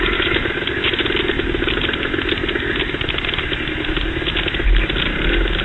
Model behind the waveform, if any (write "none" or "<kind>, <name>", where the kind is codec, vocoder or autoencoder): none